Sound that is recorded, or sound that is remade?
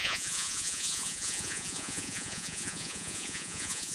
remade